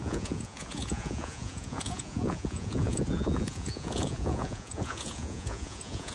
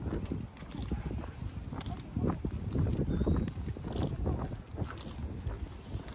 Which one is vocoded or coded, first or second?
first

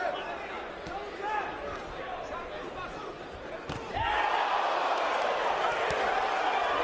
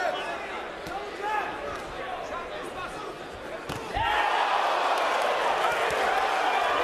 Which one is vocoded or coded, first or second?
first